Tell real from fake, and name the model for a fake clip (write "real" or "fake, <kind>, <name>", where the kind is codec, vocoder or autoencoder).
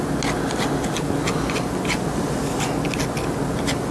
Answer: real